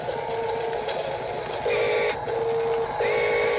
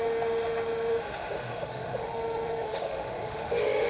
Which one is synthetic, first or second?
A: second